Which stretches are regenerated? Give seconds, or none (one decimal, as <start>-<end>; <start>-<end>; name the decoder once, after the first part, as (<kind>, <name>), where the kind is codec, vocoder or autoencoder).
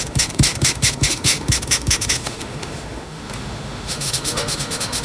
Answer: 0.0-5.0 (autoencoder, DAC-VAE)